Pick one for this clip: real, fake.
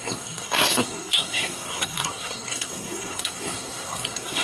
fake